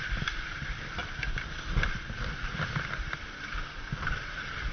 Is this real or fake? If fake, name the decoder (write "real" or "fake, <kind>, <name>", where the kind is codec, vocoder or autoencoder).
real